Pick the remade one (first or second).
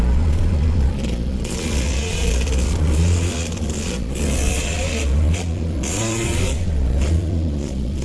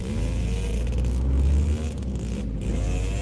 first